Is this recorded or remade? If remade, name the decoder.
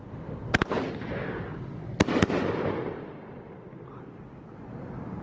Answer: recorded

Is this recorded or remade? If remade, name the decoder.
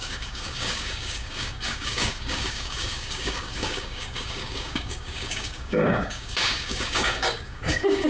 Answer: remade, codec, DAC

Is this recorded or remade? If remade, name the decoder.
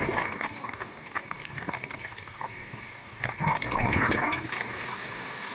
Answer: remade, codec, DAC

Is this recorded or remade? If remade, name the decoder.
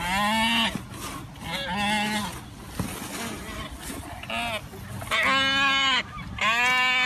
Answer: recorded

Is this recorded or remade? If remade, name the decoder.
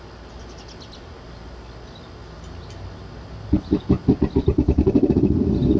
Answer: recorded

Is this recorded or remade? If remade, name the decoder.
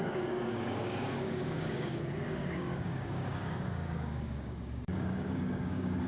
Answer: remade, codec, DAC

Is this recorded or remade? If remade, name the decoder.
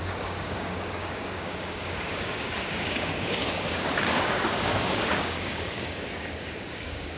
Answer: remade, codec, DAC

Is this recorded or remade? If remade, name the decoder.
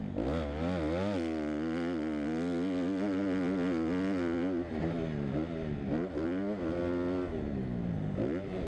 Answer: recorded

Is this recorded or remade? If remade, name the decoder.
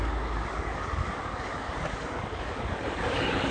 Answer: remade, codec, DAC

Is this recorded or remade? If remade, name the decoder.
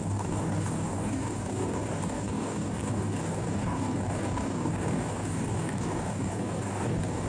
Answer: remade, codec, DAC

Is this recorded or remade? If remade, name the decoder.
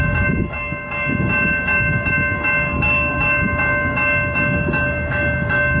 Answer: remade, codec, DAC